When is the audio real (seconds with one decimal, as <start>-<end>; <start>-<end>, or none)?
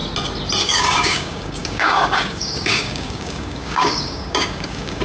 0.0-0.6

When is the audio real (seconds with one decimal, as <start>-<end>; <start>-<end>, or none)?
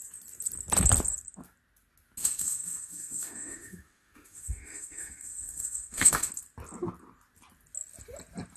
0.0-2.2; 6.3-8.6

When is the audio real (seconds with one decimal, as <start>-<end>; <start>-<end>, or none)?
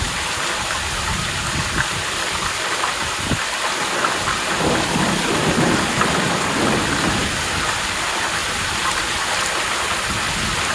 0.0-10.7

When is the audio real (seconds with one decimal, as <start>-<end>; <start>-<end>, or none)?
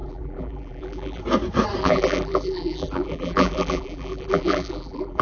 1.2-1.8